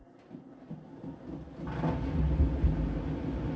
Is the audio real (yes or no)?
yes